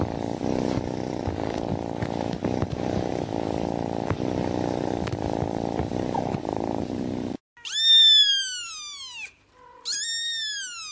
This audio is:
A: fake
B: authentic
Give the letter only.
B